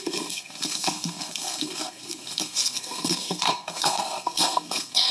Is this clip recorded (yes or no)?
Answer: no